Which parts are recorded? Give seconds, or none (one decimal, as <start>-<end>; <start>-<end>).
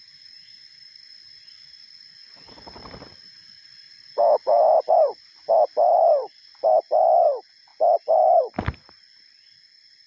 none